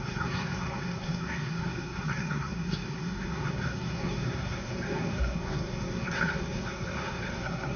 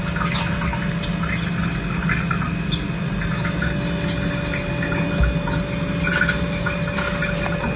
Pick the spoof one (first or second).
first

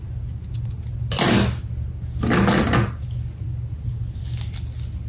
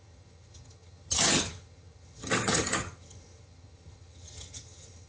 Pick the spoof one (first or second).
second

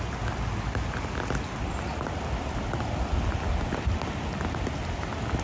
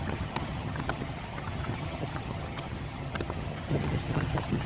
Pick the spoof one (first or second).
second